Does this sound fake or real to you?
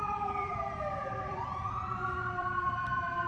fake